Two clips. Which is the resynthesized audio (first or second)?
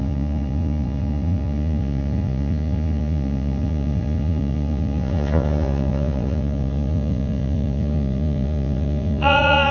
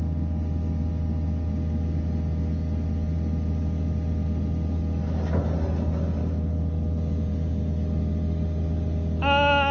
first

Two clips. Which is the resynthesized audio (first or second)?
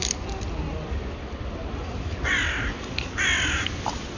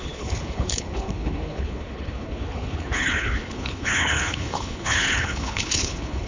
second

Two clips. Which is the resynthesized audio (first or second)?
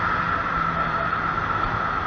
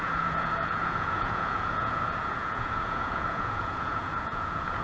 second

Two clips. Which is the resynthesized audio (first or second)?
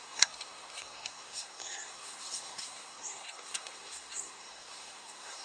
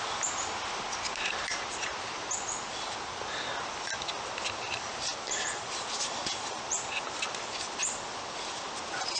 first